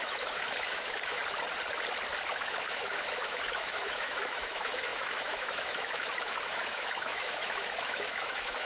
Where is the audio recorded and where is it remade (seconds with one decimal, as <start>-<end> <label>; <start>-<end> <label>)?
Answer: 0.0-1.2 remade; 1.2-2.3 recorded; 2.3-8.7 remade

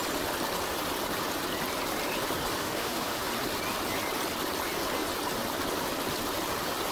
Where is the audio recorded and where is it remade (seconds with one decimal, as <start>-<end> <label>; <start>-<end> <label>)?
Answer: 0.0-2.6 recorded; 2.6-3.3 remade; 3.3-6.9 recorded

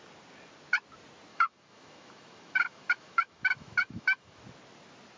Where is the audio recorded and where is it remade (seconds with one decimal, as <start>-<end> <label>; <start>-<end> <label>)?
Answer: 0.0-1.3 recorded; 1.3-4.4 remade; 4.4-5.2 recorded